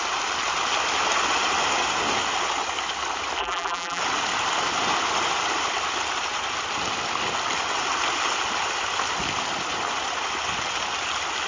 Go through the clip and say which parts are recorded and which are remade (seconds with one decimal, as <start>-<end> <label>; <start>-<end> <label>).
0.0-3.4 recorded; 3.4-4.0 remade; 4.0-11.5 recorded